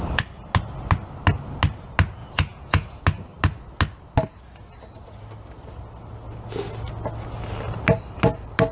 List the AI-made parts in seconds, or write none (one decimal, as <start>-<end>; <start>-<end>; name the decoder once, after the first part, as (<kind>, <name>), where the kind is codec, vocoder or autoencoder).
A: 2.2-3.0 (vocoder, Vocos)